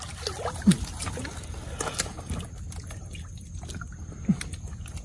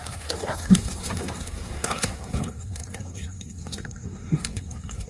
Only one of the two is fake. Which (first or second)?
second